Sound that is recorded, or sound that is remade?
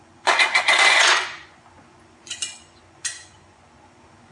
remade